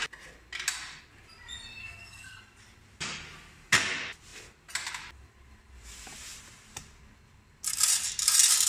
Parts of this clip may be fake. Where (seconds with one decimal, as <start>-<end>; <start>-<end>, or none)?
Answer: 1.8-2.4